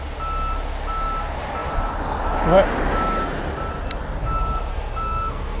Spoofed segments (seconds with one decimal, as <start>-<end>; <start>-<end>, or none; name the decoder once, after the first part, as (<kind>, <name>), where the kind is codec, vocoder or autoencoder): 4.7-5.6 (codec, SNAC)